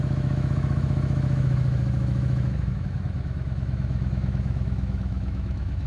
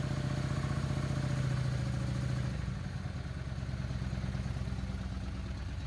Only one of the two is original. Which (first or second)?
second